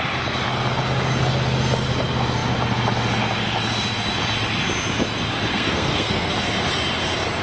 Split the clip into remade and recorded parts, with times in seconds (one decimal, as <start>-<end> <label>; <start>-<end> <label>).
0.0-5.5 recorded; 5.5-6.3 remade; 6.3-7.4 recorded

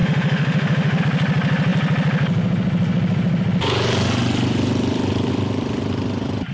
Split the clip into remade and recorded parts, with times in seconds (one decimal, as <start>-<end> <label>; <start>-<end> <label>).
0.0-1.0 remade; 1.0-6.5 recorded